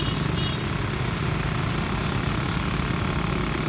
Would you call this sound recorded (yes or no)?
yes